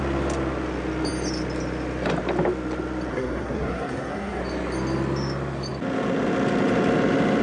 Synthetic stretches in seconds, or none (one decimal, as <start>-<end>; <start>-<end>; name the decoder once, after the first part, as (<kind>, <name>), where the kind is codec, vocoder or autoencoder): 3.1-4.4 (codec, SNAC)